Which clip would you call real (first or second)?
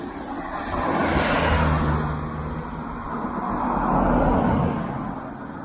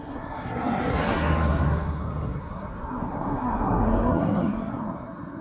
first